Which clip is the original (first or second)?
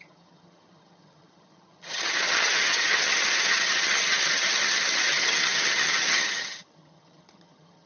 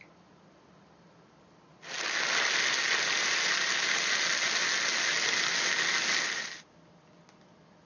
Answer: second